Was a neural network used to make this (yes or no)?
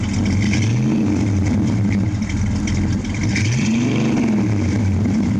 no